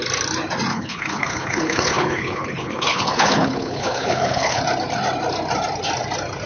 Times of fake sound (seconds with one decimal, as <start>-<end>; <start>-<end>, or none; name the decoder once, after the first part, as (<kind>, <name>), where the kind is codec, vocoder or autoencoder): 0.7-4.6 (codec, HILCodec)